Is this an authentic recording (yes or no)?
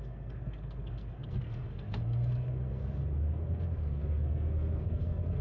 no